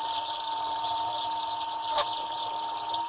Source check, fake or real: fake